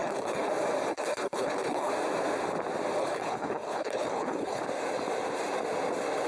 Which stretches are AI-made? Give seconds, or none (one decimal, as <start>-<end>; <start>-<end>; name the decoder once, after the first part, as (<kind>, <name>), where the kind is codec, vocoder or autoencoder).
0.0-0.5 (codec, HILCodec); 0.9-1.9; 3.0-4.6